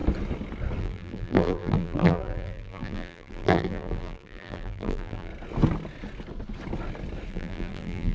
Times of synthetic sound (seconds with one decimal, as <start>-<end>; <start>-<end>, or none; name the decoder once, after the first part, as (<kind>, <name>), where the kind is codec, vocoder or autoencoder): 0.8-5.3 (vocoder, BigVGAN v2); 7.3-8.1